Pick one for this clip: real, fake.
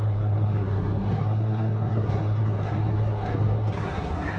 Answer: fake